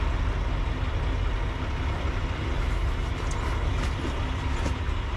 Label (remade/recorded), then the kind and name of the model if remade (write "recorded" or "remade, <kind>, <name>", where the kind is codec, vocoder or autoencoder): recorded